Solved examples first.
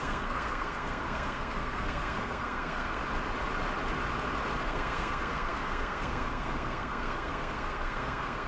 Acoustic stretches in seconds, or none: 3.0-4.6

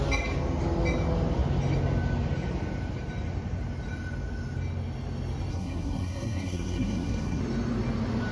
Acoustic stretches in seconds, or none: 0.0-5.5; 7.4-8.3

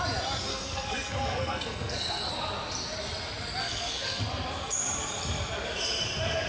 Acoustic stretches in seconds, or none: 0.0-0.5; 2.3-3.6; 4.2-6.5